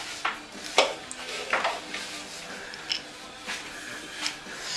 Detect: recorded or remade recorded